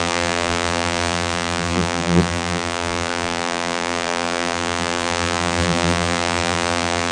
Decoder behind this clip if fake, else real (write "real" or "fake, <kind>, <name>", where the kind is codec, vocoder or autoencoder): fake, vocoder, BigVGAN v2